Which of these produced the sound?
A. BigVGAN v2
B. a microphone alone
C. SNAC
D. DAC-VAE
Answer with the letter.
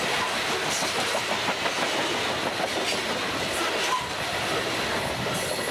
B